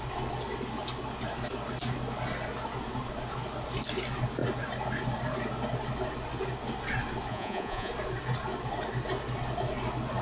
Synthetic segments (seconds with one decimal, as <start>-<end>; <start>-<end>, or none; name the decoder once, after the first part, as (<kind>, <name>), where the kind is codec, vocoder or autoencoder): 7.3-7.9 (vocoder, Vocos)